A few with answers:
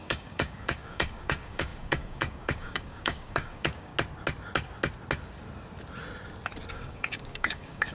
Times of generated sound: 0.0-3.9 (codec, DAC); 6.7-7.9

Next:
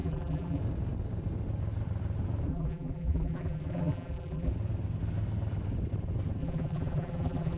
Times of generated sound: 0.0-0.6 (vocoder, BigVGAN v2); 2.5-4.5; 6.4-7.6

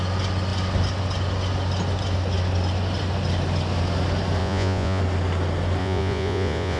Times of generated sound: 4.4-5.0 (vocoder, Vocos); 5.8-6.8

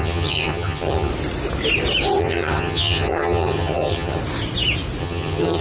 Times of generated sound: 0.0-1.1 (vocoder, HiFi-GAN); 2.2-4.2; 5.0-5.6

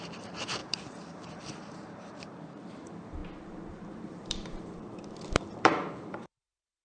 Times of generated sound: 0.0-6.8 (vocoder, BigVGAN v2)

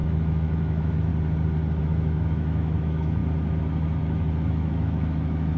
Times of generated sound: 0.0-1.1 (autoencoder, DAC-VAE); 1.8-3.2; 4.0-5.6

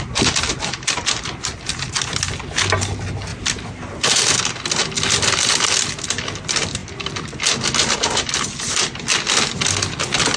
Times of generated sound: 3.3-4.1 (vocoder, BigVGAN v2)

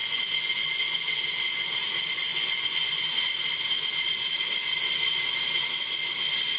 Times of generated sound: 0.0-1.2 (vocoder, Vocos); 2.3-3.0